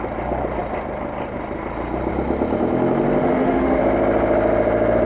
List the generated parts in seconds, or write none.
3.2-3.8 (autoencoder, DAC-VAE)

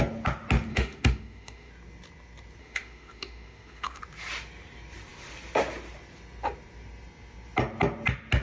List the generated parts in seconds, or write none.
0.7-1.7 (autoencoder, DAC-VAE); 2.6-4.0

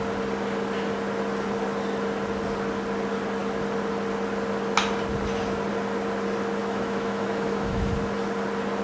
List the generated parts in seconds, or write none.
6.6-7.9 (autoencoder, DAC-VAE)

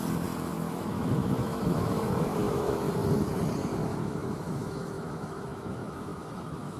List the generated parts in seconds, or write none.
0.5-2.9 (autoencoder, DAC-VAE); 3.6-6.8

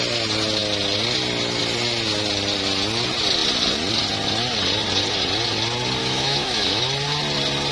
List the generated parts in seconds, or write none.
6.0-6.8 (autoencoder, DAC-VAE)

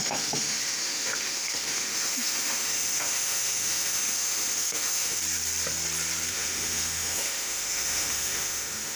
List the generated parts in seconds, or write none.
0.0-5.2 (autoencoder, DAC-VAE); 6.3-9.0

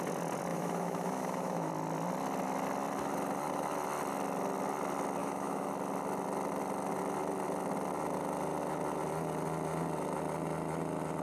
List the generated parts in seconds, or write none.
0.5-1.7 (autoencoder, DAC-VAE); 5.2-5.7